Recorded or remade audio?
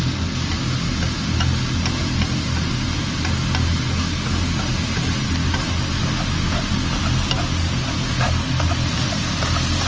recorded